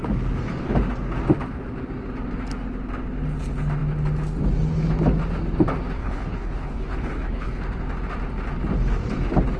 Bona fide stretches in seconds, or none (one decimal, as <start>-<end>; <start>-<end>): 0.0-6.0; 7.6-9.6